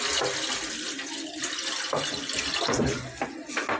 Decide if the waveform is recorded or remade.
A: recorded